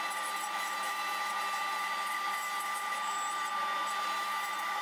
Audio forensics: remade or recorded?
remade